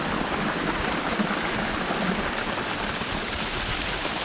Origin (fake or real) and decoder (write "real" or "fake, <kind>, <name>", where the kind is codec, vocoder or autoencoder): real